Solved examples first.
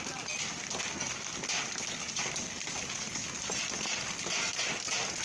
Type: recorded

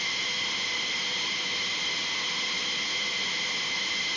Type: recorded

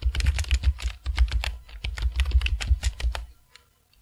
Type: recorded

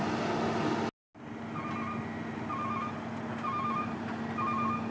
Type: recorded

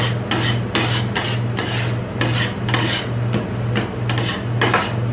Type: recorded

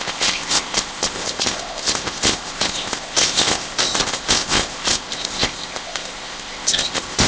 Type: remade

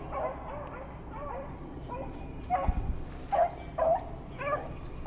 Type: recorded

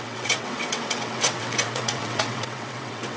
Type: remade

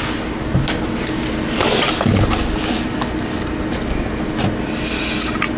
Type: recorded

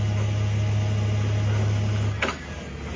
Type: recorded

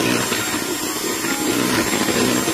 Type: recorded